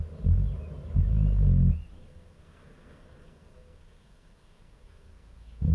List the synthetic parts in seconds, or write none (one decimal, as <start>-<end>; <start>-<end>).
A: 2.0-5.7

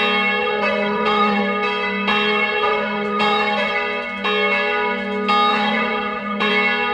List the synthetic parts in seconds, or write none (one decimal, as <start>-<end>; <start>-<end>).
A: 0.4-1.4; 2.1-3.7; 5.5-6.5

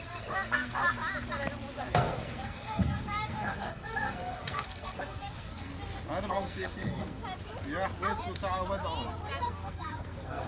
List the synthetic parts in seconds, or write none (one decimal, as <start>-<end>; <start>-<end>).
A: 0.0-0.8; 1.9-5.7; 6.3-7.2; 9.4-10.5